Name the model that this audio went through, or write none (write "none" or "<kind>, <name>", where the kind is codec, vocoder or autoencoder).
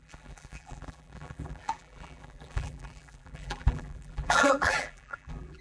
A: vocoder, BigVGAN v2